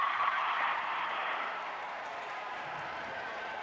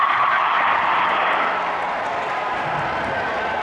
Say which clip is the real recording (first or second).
second